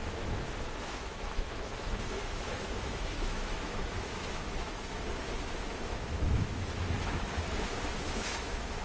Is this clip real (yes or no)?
no